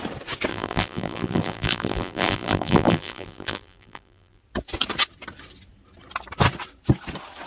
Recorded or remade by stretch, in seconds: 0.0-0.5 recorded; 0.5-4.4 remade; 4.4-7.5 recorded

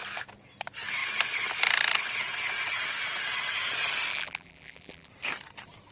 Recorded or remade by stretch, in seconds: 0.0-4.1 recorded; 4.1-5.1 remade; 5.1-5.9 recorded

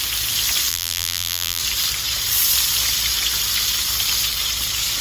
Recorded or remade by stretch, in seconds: 0.0-0.7 recorded; 0.7-1.6 remade; 1.6-5.0 recorded